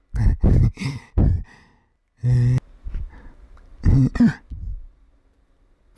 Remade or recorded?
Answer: recorded